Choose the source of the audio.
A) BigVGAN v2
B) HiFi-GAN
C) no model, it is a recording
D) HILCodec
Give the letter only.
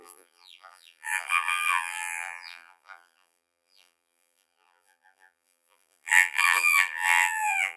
A